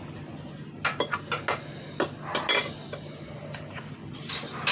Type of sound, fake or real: real